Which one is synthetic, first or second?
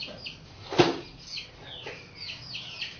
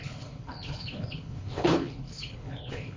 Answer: second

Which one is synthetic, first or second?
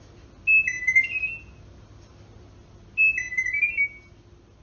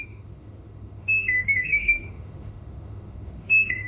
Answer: second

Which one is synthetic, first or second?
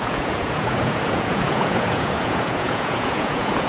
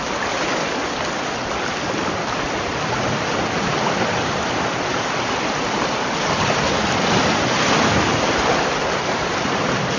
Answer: first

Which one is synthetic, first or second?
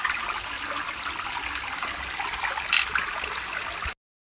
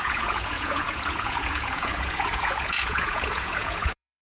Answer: second